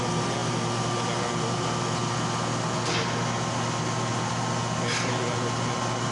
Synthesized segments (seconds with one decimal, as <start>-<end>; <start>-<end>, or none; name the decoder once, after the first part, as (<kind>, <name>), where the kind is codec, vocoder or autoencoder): none